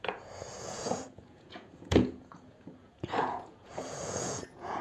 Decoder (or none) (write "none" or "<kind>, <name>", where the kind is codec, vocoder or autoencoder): vocoder, Vocos